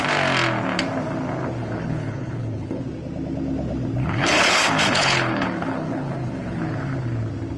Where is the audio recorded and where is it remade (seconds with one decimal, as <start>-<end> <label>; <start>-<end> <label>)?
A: 0.0-1.6 recorded; 1.6-2.8 remade; 2.8-4.0 recorded; 4.0-6.6 remade; 6.6-7.6 recorded